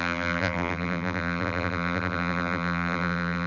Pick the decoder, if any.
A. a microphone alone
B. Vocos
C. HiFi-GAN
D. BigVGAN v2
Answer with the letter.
D